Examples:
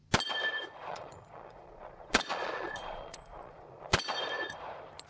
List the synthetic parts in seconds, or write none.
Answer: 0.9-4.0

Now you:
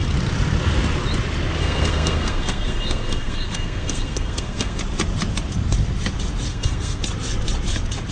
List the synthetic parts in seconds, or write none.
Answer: 1.6-4.8; 6.5-7.0